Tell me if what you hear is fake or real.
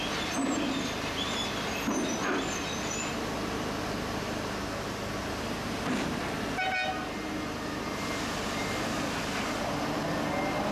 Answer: real